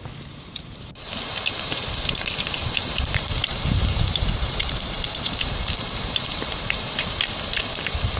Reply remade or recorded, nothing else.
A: remade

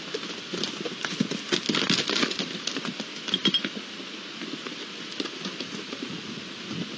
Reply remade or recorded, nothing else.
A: recorded